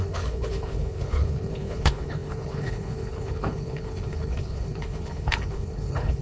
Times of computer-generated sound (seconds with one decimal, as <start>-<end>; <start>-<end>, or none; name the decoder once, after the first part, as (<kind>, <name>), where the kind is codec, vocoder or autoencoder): 0.0-6.2 (codec, HILCodec)